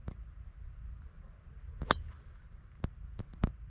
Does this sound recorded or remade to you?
recorded